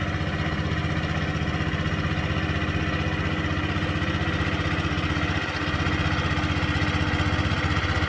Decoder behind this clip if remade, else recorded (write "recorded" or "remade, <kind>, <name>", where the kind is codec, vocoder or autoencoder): recorded